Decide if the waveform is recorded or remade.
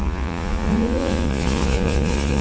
remade